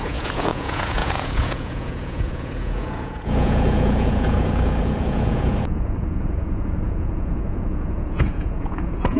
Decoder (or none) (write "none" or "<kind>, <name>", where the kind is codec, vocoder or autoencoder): vocoder, Vocos